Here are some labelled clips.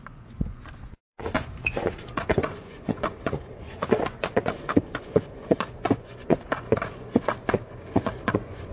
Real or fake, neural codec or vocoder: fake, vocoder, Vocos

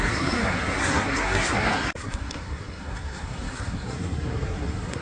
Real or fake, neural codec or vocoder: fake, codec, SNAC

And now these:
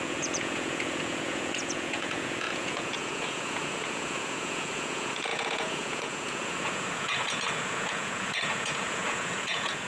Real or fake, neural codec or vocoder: fake, vocoder, Vocos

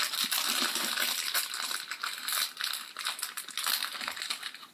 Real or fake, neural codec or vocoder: real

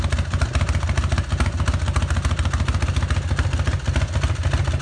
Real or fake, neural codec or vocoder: real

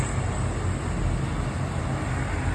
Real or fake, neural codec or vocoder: real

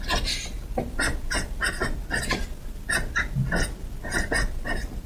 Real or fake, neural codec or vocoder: real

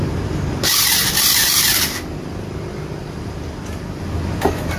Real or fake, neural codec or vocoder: real